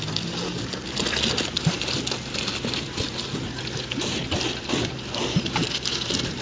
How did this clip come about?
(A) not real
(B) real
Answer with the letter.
B